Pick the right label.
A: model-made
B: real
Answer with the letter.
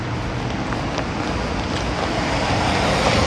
B